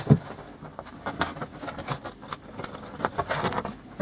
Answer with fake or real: real